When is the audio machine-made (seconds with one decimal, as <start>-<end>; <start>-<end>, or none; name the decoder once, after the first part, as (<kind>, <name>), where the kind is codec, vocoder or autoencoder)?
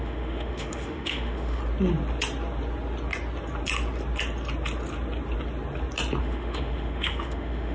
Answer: 0.0-1.6 (autoencoder, DAC-VAE); 6.2-7.7